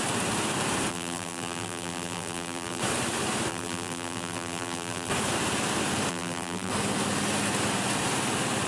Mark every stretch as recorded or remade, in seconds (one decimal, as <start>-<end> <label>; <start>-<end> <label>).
0.0-0.9 recorded; 0.9-2.8 remade; 2.8-3.5 recorded; 3.5-5.1 remade; 5.1-6.1 recorded; 6.1-6.7 remade; 6.7-8.7 recorded